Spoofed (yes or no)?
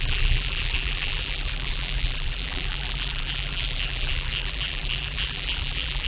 yes